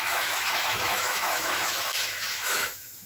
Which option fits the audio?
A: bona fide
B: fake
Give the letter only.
B